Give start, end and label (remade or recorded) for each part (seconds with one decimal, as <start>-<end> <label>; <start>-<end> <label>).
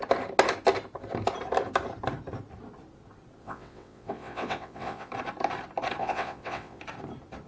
0.0-3.4 recorded; 3.4-5.1 remade; 5.1-6.0 recorded; 6.0-6.8 remade; 6.8-7.5 recorded